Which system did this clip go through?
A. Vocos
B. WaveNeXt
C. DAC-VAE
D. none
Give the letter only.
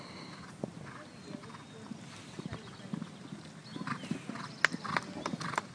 D